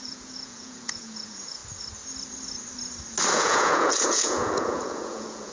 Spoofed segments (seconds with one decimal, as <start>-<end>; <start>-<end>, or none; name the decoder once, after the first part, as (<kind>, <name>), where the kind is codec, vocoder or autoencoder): 0.0-1.6 (vocoder, Vocos); 3.3-5.5